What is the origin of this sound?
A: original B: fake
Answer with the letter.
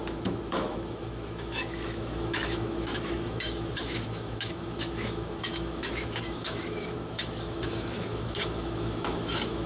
B